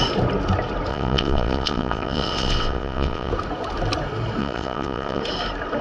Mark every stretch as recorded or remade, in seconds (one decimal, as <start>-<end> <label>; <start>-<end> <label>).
0.0-0.9 recorded; 0.9-3.3 remade; 3.3-4.4 recorded; 4.4-5.2 remade; 5.2-5.8 recorded